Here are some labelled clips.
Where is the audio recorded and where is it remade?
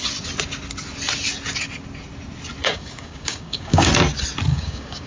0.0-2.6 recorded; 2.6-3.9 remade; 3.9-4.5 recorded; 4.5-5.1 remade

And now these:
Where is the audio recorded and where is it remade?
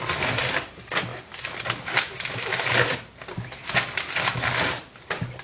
0.0-5.4 recorded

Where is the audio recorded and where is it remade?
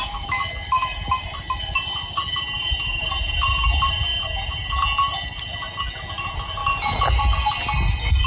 0.0-8.3 recorded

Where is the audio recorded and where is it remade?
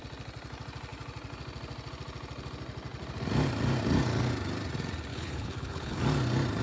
0.0-5.1 recorded; 5.1-6.0 remade; 6.0-6.6 recorded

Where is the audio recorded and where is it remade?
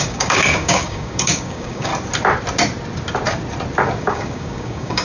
0.0-1.9 remade; 1.9-4.0 recorded; 4.0-5.0 remade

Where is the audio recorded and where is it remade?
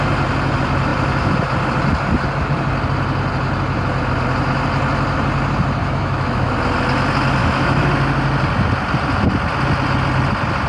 0.0-5.8 recorded; 5.8-6.5 remade; 6.5-7.4 recorded; 7.4-7.9 remade; 7.9-10.7 recorded